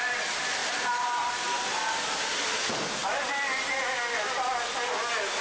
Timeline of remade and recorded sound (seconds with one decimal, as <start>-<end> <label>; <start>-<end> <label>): 0.0-0.6 recorded; 0.6-1.3 remade; 1.3-3.0 recorded; 3.0-3.7 remade; 3.7-5.4 recorded